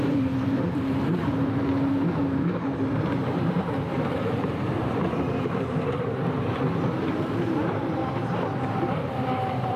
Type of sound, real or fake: fake